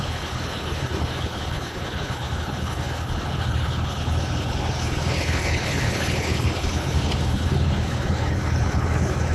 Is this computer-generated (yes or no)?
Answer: yes